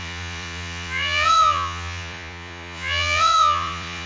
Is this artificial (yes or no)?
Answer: yes